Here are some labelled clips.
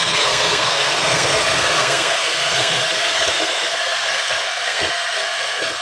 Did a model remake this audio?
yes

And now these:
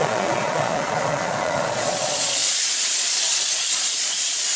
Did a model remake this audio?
yes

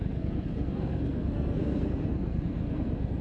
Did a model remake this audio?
yes